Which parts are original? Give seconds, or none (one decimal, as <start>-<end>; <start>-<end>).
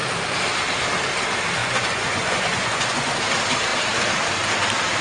0.0-1.6; 3.2-5.0